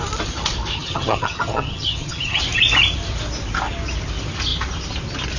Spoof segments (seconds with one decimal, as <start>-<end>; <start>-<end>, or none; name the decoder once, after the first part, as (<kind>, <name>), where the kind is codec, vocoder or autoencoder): 0.7-2.4 (vocoder, HiFi-GAN)

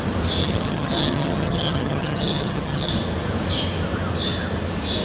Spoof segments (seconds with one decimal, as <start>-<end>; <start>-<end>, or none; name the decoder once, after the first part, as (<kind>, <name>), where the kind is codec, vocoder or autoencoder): 0.4-2.9 (vocoder, HiFi-GAN)

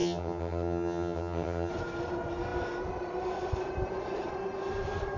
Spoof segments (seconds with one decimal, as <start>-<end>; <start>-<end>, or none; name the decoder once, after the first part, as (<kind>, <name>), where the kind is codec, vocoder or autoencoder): 0.0-1.7 (vocoder, HiFi-GAN)

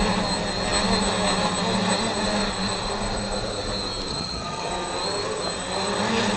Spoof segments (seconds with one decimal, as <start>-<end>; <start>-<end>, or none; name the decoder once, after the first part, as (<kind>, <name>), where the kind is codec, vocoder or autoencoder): 4.1-4.7 (vocoder, HiFi-GAN)

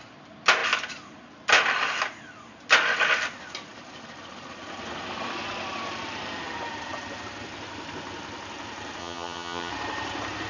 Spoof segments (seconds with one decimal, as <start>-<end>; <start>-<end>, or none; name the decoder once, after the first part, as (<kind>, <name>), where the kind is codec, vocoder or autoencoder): 9.0-9.7 (vocoder, HiFi-GAN)

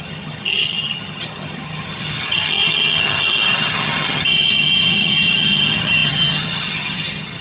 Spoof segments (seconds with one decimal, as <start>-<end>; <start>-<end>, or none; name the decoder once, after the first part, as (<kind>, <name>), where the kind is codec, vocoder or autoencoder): 0.0-7.4 (vocoder, HiFi-GAN)